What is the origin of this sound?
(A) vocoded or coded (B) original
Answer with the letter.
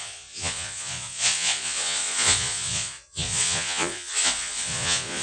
A